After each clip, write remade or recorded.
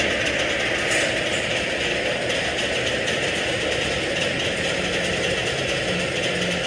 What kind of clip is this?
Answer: recorded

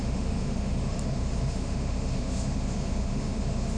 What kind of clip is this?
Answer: remade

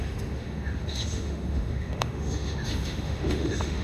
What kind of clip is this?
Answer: remade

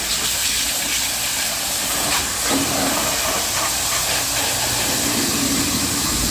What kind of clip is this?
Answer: recorded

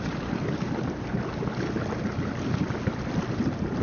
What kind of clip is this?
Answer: recorded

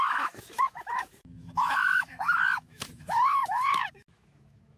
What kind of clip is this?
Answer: remade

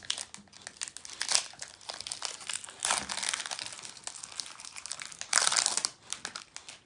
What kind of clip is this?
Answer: recorded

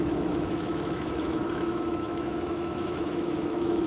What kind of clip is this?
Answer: remade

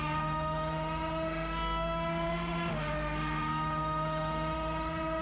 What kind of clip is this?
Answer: remade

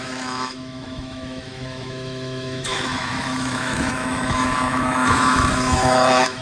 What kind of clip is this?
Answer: remade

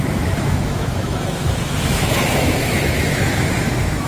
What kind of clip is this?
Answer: remade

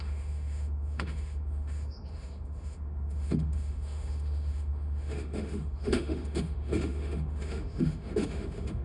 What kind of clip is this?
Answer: remade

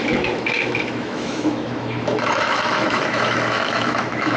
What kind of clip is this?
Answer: remade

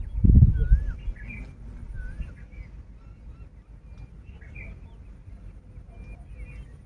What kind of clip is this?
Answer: recorded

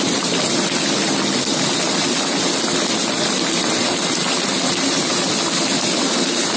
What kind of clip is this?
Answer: recorded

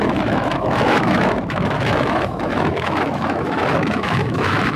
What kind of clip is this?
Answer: remade